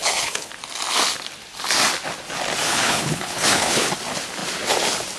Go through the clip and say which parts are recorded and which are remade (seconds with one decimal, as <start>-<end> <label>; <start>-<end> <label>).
0.0-0.5 remade; 0.5-2.6 recorded; 2.6-3.9 remade; 3.9-5.2 recorded